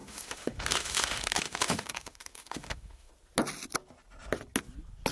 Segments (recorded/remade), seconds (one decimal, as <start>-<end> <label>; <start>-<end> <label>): 0.0-3.1 remade; 3.1-5.1 recorded